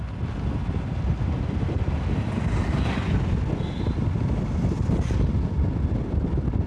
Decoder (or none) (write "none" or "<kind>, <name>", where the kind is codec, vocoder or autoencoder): none